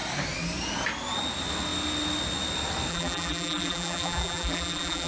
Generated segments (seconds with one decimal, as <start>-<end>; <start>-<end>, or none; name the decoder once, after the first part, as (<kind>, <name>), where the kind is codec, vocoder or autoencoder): 2.9-5.1 (vocoder, BigVGAN v2)

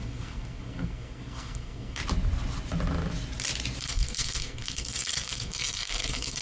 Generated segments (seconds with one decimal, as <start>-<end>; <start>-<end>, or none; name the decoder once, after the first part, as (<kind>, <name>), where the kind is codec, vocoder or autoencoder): 0.0-2.0 (codec, SNAC); 3.8-6.4

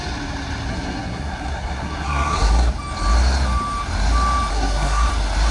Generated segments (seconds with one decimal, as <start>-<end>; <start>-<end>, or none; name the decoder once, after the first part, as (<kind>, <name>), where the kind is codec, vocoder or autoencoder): 0.7-2.7 (codec, SNAC); 4.5-5.1

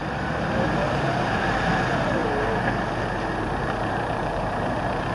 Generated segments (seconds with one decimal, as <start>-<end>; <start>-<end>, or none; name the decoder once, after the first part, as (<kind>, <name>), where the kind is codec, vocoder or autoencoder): 0.0-2.2 (vocoder, BigVGAN v2); 3.4-5.1

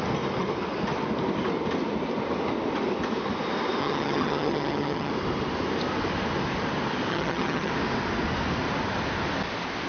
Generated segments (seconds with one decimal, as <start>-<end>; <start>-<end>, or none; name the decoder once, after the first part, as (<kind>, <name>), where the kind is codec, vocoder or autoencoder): 3.8-5.1 (vocoder, HiFi-GAN); 7.1-7.7

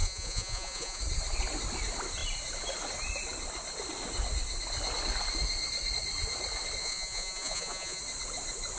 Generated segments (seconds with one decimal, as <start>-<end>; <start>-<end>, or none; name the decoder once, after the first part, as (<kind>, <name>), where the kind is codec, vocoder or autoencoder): 0.0-1.0 (vocoder, Vocos); 6.8-8.0

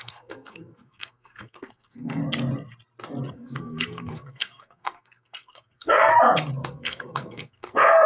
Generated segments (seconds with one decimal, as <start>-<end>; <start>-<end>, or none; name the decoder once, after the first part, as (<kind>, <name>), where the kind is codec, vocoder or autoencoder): 0.0-2.2 (codec, SNAC); 3.3-6.1; 6.7-8.1